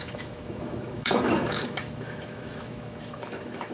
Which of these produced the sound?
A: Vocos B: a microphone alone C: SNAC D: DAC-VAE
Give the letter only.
D